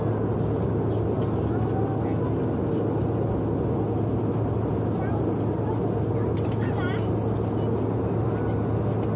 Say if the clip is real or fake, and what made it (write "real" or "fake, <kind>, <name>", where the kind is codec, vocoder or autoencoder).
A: real